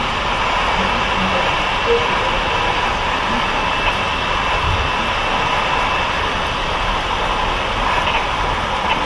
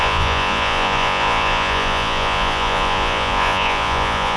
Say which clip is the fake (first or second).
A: second